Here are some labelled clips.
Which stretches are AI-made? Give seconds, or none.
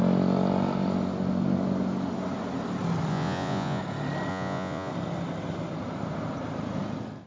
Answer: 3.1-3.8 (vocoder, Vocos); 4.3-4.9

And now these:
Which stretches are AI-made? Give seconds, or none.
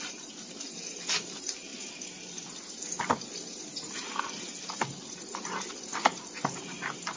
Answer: none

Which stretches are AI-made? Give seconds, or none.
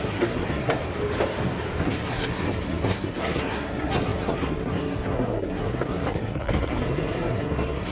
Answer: 0.0-0.8 (codec, SNAC); 1.8-7.9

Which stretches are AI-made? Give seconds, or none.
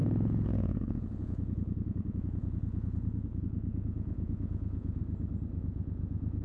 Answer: 0.0-5.0 (vocoder, Vocos); 5.6-6.4